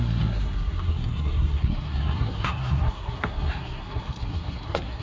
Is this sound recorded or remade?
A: remade